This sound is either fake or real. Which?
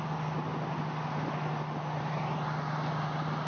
real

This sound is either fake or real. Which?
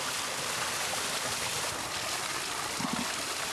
real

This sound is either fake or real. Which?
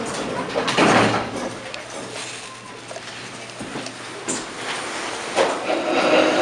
real